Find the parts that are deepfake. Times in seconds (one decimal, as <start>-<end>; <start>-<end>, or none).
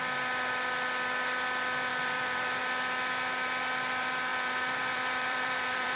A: 1.9-2.6; 4.3-6.0